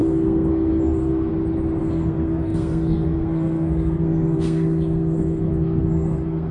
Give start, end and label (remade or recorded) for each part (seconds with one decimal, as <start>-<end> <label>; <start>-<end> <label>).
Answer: 0.0-1.3 remade; 1.3-1.8 recorded; 1.8-6.5 remade